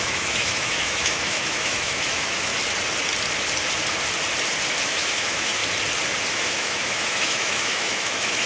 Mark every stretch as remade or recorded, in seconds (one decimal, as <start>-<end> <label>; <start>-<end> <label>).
0.0-2.5 remade; 2.5-4.8 recorded; 4.8-5.6 remade; 5.6-6.3 recorded; 6.3-8.5 remade